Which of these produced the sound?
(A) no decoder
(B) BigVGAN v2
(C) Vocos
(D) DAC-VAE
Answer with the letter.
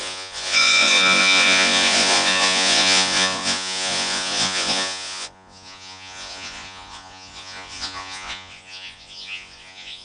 C